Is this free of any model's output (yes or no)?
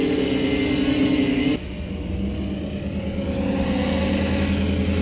yes